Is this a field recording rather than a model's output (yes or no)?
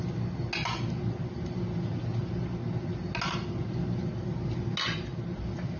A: yes